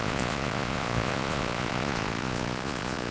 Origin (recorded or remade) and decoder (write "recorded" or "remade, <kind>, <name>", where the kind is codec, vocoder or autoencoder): remade, vocoder, Vocos